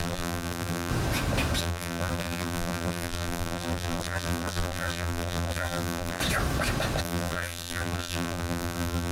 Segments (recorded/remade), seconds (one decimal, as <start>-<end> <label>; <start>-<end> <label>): 0.0-0.9 remade; 0.9-1.6 recorded; 1.6-6.2 remade; 6.2-7.0 recorded; 7.0-9.1 remade